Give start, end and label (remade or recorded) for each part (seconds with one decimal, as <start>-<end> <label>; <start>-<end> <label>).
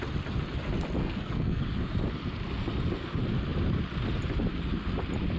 0.0-1.0 recorded; 1.0-1.6 remade; 1.6-5.4 recorded